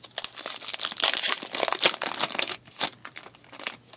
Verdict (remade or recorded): recorded